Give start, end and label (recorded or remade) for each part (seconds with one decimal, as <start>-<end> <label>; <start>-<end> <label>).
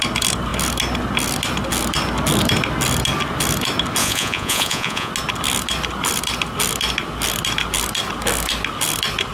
0.0-4.0 recorded; 4.0-5.1 remade; 5.1-9.3 recorded